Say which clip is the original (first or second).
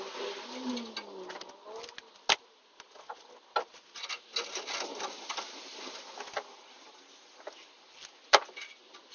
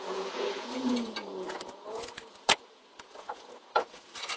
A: first